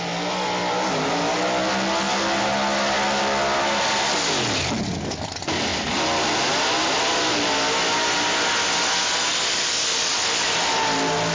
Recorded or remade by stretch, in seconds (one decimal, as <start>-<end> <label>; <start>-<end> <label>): 0.0-11.3 recorded